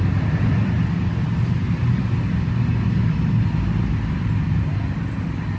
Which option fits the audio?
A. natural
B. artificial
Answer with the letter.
A